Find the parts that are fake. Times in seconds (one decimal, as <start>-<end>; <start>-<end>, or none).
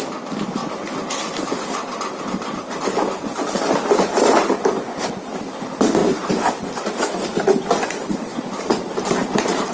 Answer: none